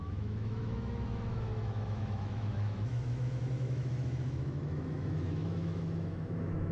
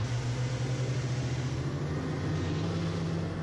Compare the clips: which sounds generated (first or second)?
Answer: first